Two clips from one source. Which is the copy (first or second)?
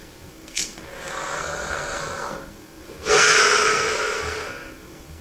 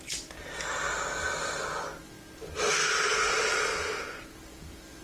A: first